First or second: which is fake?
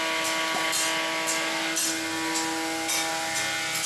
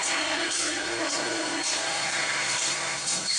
second